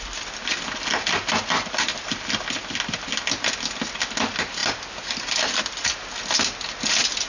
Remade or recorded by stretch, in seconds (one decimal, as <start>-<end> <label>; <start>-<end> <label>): 0.0-7.3 recorded